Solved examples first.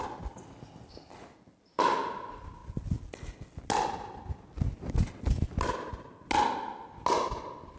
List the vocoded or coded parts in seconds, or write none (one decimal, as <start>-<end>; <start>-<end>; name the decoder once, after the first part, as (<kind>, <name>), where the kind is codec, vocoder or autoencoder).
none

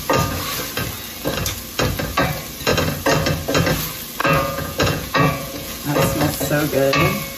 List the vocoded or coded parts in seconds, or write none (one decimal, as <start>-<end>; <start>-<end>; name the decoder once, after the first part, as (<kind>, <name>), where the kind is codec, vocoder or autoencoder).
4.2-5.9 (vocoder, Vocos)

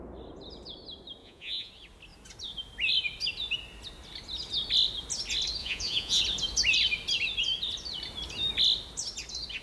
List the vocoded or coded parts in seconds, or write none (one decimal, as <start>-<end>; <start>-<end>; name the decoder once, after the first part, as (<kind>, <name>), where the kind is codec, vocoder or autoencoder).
1.2-1.7 (vocoder, Vocos); 5.6-6.2